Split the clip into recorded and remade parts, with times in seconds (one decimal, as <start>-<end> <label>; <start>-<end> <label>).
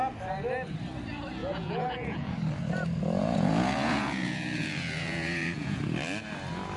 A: 0.0-1.4 recorded; 1.4-2.3 remade; 2.3-3.2 recorded; 3.2-5.8 remade; 5.8-6.8 recorded